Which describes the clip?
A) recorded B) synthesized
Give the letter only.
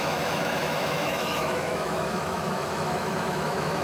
B